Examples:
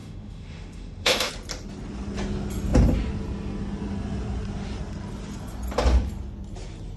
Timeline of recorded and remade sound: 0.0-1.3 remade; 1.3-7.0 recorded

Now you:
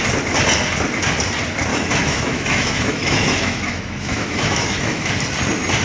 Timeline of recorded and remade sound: 0.0-1.7 recorded; 1.7-5.1 remade; 5.1-5.8 recorded

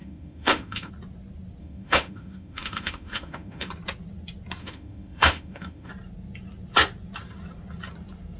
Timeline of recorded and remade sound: 0.0-0.9 remade; 0.9-1.6 recorded; 1.6-3.7 remade; 3.7-4.6 recorded; 4.6-5.9 remade; 5.9-8.4 recorded